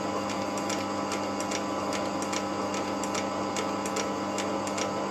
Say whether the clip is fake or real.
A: real